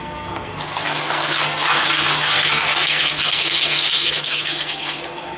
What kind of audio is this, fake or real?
fake